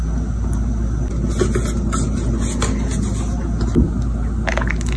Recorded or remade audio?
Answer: recorded